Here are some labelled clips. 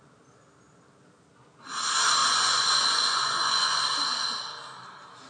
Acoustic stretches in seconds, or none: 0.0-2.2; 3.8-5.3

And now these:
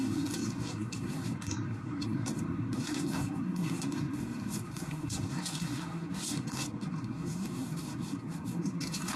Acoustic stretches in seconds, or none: none

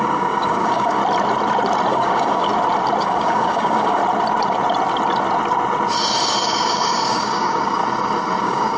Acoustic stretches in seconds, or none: 1.0-1.9; 2.5-3.0; 4.0-6.3; 7.8-8.4

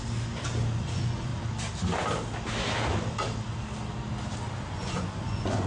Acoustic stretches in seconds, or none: 0.0-0.9; 1.3-4.7

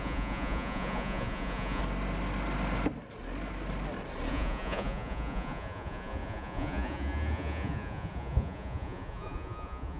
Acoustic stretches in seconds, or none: 1.8-4.3

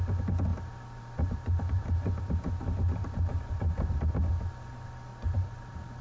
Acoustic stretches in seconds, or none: 0.0-0.5; 4.1-5.1

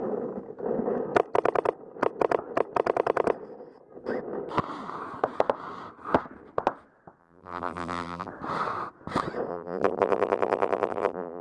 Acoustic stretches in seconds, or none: 0.0-7.2; 8.3-9.5

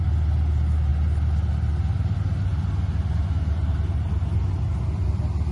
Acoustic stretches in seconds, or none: 0.0-5.5